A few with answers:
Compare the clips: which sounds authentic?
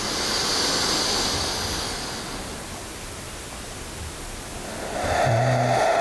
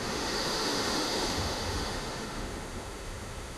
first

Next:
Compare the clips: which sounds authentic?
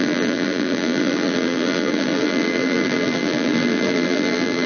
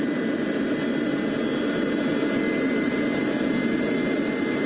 second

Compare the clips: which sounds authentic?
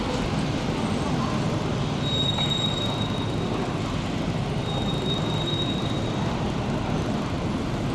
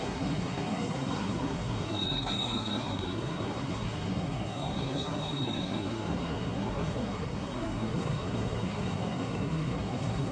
first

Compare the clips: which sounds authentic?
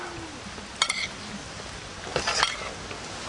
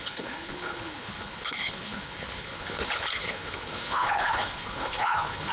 first